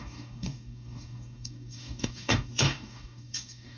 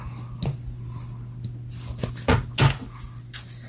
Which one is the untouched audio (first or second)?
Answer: second